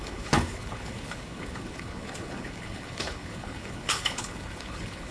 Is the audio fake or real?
fake